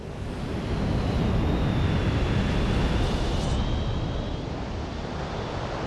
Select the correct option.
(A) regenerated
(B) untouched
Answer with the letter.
B